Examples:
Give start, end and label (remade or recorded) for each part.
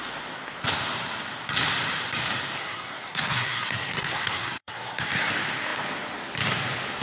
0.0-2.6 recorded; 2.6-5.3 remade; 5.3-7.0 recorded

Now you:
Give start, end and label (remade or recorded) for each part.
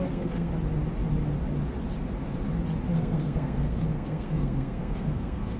0.0-0.5 remade; 0.5-2.9 recorded; 2.9-5.6 remade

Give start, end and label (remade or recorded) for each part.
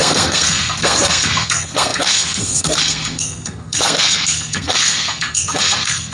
0.0-6.1 remade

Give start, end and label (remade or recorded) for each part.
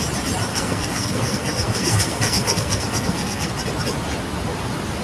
0.0-0.5 recorded; 0.5-3.5 remade; 3.5-5.0 recorded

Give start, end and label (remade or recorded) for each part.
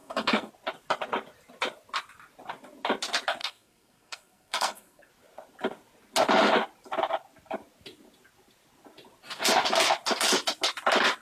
0.0-0.5 remade; 0.5-3.4 recorded; 3.4-5.1 remade; 5.1-11.2 recorded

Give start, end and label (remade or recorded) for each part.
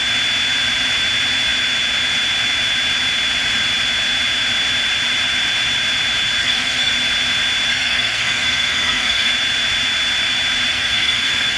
0.0-6.4 recorded; 6.4-6.9 remade; 6.9-7.7 recorded; 7.7-9.3 remade; 9.3-10.7 recorded; 10.7-11.6 remade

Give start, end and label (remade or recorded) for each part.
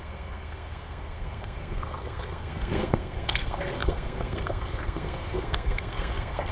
0.0-6.5 remade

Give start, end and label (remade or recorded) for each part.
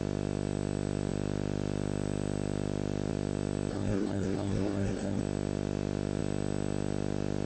0.0-3.7 recorded; 3.7-5.2 remade; 5.2-7.5 recorded